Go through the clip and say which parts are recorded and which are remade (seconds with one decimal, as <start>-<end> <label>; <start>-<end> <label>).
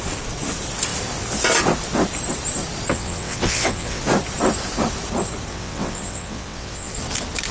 0.0-2.9 recorded; 2.9-4.0 remade; 4.0-5.5 recorded; 5.5-6.9 remade; 6.9-7.5 recorded